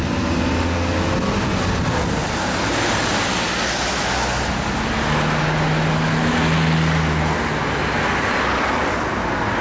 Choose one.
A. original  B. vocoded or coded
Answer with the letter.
A